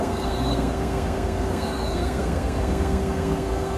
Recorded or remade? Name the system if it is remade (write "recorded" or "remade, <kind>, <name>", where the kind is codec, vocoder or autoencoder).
remade, codec, SNAC